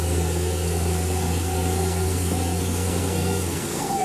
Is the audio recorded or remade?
remade